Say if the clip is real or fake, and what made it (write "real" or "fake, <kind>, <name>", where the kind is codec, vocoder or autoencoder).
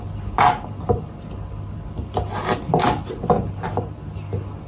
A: real